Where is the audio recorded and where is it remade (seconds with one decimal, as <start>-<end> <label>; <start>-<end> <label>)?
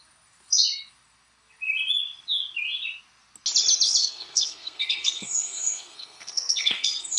0.0-4.0 recorded; 4.0-7.2 remade